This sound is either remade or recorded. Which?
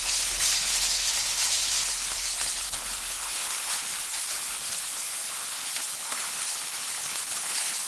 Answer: remade